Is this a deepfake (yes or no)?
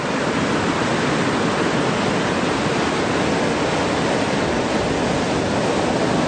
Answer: no